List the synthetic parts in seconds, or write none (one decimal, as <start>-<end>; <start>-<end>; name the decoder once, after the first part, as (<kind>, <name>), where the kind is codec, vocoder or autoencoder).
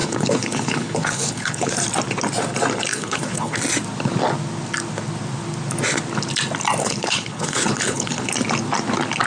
0.0-1.7 (codec, HILCodec); 2.9-3.6; 6.8-8.3